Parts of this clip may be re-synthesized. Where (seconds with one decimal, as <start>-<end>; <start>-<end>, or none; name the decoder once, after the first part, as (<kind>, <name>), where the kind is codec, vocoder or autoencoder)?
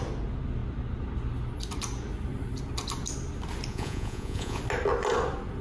3.7-4.6 (vocoder, Vocos)